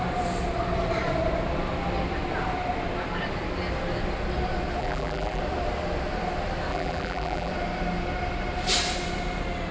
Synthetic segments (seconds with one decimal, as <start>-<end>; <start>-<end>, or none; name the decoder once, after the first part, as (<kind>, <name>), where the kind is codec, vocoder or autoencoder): 4.8-5.4 (vocoder, BigVGAN v2); 6.7-7.5